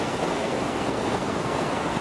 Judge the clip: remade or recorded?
remade